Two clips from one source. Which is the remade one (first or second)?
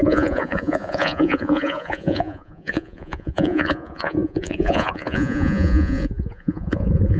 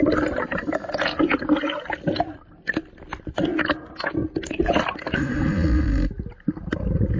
first